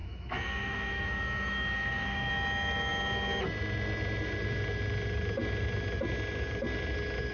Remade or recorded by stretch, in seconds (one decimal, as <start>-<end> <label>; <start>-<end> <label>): 0.0-2.3 remade; 2.3-7.3 recorded